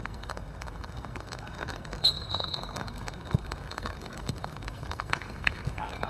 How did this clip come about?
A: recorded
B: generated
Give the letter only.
B